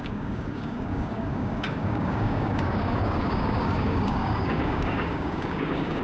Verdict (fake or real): fake